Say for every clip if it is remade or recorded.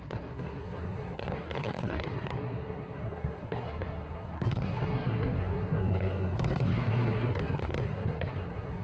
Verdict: remade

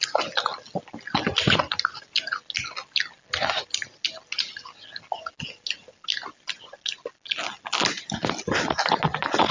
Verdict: recorded